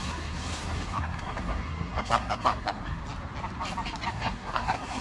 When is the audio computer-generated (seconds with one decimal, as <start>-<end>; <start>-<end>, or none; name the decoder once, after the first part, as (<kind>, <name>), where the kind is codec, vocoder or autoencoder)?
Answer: 0.0-3.0 (codec, SNAC); 4.1-5.0